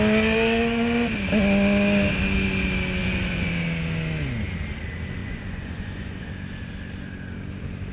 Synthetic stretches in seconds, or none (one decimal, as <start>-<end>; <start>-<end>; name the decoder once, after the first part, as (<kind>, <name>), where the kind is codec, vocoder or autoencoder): 3.0-3.5 (vocoder, Vocos); 5.2-6.3

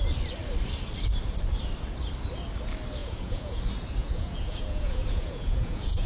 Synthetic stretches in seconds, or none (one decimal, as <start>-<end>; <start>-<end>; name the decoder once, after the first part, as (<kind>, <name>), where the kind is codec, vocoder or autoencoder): 3.0-3.6 (vocoder, Vocos); 4.0-6.1